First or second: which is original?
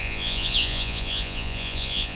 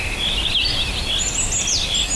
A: second